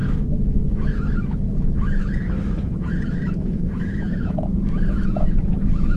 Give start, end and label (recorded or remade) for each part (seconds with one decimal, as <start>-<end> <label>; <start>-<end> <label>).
0.0-6.0 remade